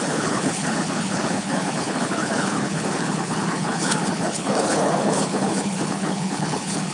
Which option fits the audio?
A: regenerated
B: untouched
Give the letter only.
A